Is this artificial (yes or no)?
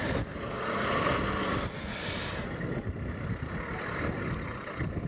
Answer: no